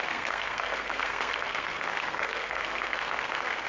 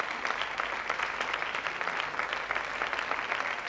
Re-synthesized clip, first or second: first